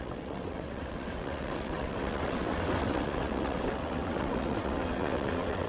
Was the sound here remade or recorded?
remade